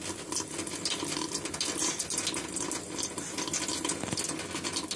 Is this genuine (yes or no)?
yes